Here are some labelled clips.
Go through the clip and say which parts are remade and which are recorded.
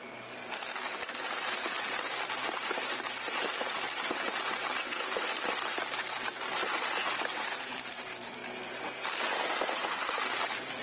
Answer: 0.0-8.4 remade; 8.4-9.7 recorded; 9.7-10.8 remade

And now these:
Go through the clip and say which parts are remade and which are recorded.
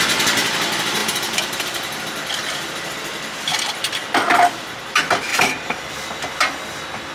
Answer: 0.0-1.0 recorded; 1.0-2.0 remade; 2.0-5.3 recorded; 5.3-5.9 remade; 5.9-7.1 recorded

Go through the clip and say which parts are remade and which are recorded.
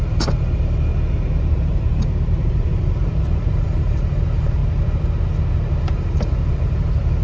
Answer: 0.0-0.9 remade; 0.9-1.5 recorded; 1.5-4.6 remade; 4.6-5.8 recorded; 5.8-7.2 remade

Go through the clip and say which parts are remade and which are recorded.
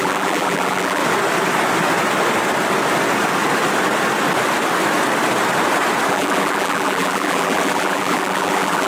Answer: 0.0-1.0 remade; 1.0-6.1 recorded; 6.1-8.9 remade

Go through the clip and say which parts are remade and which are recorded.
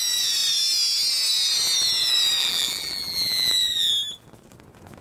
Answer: 0.0-2.4 recorded; 2.4-3.9 remade; 3.9-5.0 recorded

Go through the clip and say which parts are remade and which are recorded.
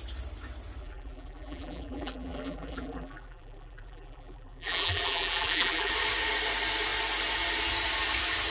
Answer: 0.0-0.8 recorded; 0.8-5.9 remade; 5.9-8.5 recorded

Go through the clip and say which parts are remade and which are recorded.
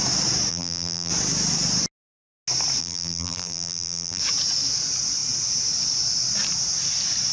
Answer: 0.0-0.5 recorded; 0.5-1.1 remade; 1.1-2.8 recorded; 2.8-4.2 remade; 4.2-7.3 recorded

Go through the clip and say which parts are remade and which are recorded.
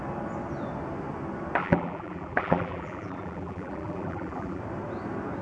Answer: 0.0-1.6 recorded; 1.6-4.6 remade; 4.6-5.4 recorded